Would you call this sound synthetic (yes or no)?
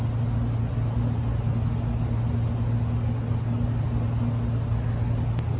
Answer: no